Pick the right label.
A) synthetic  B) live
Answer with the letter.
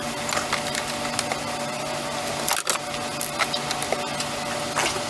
B